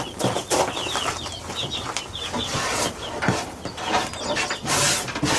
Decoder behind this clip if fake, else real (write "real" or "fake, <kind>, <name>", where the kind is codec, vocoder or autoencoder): real